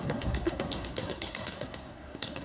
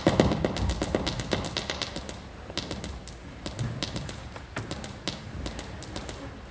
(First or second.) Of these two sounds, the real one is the second